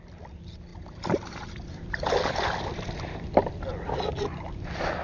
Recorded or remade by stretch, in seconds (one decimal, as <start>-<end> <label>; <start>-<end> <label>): 0.0-0.7 recorded; 0.7-3.5 remade; 3.5-5.0 recorded